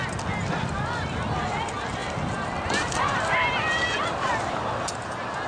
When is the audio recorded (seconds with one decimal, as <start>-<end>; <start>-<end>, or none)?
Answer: 0.0-5.5